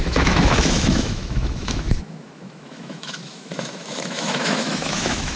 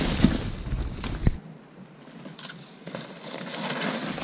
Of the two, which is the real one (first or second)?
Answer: second